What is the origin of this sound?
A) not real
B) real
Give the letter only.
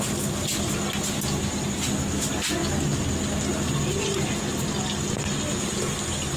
B